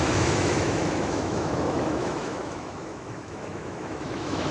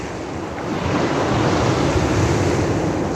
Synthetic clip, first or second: first